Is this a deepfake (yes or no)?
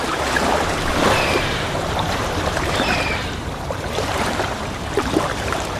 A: yes